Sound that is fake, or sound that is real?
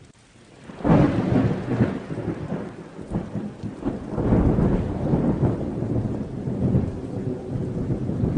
real